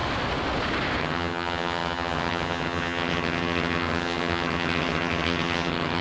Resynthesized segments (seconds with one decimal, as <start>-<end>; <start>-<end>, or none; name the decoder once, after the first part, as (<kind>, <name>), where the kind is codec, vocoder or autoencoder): 1.0-6.0 (vocoder, HiFi-GAN)